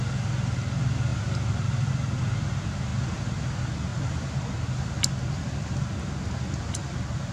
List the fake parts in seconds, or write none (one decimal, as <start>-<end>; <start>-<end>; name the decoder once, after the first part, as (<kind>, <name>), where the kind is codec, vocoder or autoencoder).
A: 3.9-5.1 (vocoder, BigVGAN v2)